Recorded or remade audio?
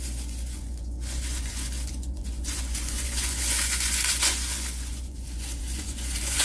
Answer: remade